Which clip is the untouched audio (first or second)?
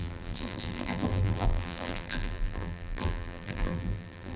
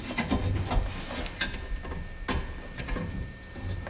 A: second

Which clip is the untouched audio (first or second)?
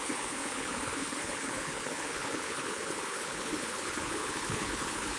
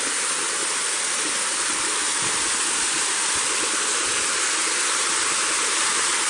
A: second